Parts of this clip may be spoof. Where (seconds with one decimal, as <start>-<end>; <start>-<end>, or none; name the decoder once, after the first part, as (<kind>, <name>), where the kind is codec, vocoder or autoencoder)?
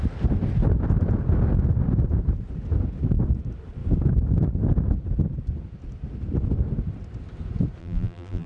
7.8-8.5 (vocoder, BigVGAN v2)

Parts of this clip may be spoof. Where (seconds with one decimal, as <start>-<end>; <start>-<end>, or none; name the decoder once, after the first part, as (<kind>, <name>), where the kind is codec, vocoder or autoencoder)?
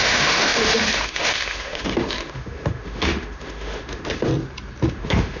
0.0-4.3 (autoencoder, DAC-VAE); 4.9-5.4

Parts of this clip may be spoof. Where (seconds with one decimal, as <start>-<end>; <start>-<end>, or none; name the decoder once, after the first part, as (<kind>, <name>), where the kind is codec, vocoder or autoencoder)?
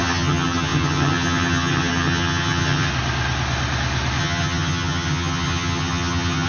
0.0-2.9 (vocoder, HiFi-GAN); 4.2-6.5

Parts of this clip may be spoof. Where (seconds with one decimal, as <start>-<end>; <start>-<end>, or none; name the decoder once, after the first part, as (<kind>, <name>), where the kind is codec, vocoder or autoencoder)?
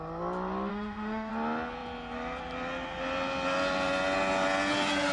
0.7-1.3 (autoencoder, DAC-VAE)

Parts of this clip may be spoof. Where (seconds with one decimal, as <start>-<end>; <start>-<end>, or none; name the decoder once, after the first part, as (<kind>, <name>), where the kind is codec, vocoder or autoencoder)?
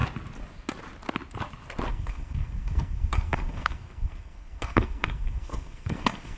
1.9-6.4 (codec, SNAC)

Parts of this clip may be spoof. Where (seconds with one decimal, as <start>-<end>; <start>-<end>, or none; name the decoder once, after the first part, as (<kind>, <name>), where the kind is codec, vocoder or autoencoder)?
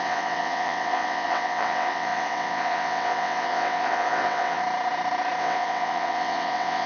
0.0-4.6 (vocoder, WaveNeXt); 5.4-6.9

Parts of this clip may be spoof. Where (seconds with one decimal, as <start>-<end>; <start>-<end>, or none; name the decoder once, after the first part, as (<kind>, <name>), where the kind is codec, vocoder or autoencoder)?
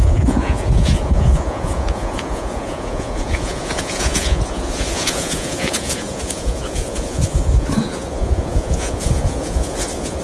0.0-10.2 (vocoder, Vocos)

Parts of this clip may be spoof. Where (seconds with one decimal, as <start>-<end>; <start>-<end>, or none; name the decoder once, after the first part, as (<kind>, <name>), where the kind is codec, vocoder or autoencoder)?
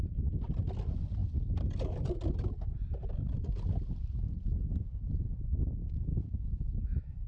none